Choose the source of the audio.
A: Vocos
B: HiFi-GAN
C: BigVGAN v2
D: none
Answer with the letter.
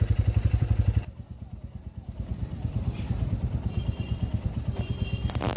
C